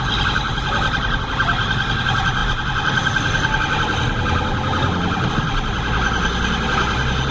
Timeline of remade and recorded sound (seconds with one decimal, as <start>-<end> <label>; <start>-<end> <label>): 0.0-7.3 recorded